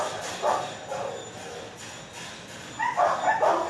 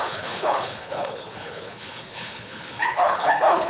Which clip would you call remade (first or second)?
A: second